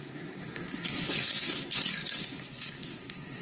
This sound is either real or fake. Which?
fake